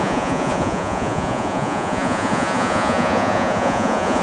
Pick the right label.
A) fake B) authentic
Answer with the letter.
A